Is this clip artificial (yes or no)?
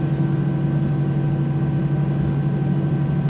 no